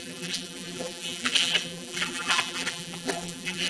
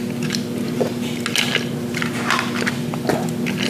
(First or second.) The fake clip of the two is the first